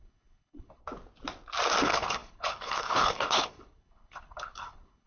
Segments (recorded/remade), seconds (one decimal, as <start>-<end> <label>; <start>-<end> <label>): 0.0-0.8 remade; 0.8-1.8 recorded; 1.8-5.1 remade